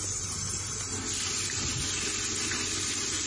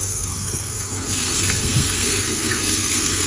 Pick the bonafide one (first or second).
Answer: first